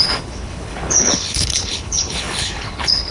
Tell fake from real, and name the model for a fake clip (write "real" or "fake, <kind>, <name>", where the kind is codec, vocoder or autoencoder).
fake, codec, HILCodec